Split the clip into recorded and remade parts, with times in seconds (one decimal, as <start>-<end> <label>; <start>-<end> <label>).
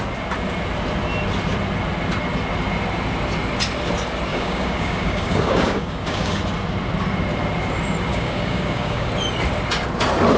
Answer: 0.0-4.3 recorded; 4.3-6.4 remade; 6.4-8.1 recorded; 8.1-9.1 remade; 9.1-10.4 recorded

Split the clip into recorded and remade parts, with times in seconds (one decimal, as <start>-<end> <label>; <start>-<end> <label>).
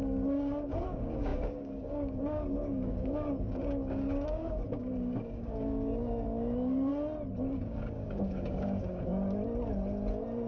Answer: 0.0-6.9 remade; 6.9-7.5 recorded; 7.5-9.1 remade; 9.1-10.5 recorded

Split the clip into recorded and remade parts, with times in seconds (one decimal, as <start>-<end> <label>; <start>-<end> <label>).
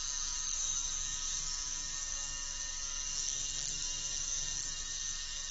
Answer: 0.0-5.5 remade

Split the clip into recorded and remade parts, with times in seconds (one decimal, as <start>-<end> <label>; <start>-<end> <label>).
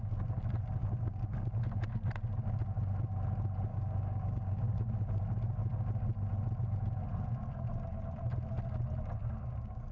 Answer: 0.0-0.8 recorded; 0.8-1.5 remade; 1.5-3.7 recorded; 3.7-5.2 remade; 5.2-9.2 recorded; 9.2-9.9 remade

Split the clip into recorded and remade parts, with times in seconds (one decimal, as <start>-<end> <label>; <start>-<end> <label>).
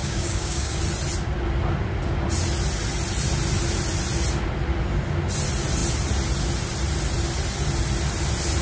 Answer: 0.0-0.8 remade; 0.8-8.6 recorded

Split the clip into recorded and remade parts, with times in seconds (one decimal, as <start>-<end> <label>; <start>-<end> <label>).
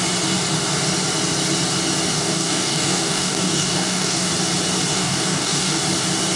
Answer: 0.0-2.1 recorded; 2.1-4.3 remade; 4.3-4.9 recorded; 4.9-5.8 remade; 5.8-6.4 recorded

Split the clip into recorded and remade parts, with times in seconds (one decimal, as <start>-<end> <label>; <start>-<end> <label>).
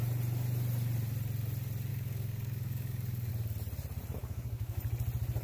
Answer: 0.0-1.9 recorded; 1.9-3.3 remade; 3.3-4.2 recorded; 4.2-4.8 remade; 4.8-5.4 recorded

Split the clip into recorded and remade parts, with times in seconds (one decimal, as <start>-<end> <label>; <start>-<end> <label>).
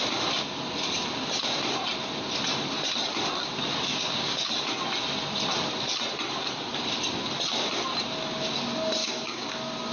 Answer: 0.0-3.9 recorded; 3.9-4.5 remade; 4.5-9.0 recorded; 9.0-9.5 remade; 9.5-9.9 recorded